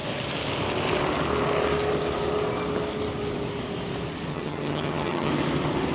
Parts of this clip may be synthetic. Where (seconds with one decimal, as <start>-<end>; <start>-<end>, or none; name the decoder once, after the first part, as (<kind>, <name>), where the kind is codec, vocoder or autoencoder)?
4.3-5.3 (vocoder, HiFi-GAN)